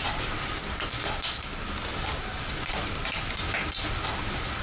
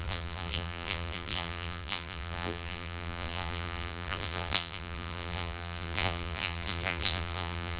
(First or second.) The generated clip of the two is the second